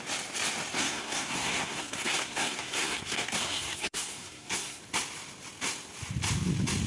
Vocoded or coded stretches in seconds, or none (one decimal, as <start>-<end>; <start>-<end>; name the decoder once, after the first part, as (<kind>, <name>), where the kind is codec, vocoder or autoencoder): 0.8-4.8 (codec, SNAC)